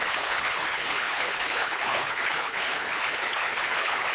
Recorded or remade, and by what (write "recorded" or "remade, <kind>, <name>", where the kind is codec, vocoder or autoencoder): remade, codec, HILCodec